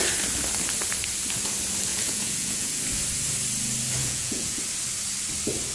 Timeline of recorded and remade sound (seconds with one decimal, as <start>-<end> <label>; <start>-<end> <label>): 0.0-1.9 recorded; 1.9-2.8 remade; 2.8-4.0 recorded; 4.0-4.6 remade; 4.6-5.7 recorded